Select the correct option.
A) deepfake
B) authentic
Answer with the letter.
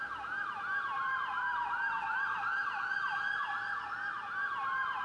B